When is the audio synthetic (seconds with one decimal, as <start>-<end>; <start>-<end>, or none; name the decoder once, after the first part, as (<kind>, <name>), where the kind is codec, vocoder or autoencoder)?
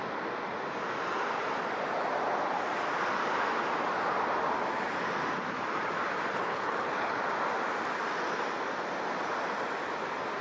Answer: 6.4-7.2 (codec, HILCodec)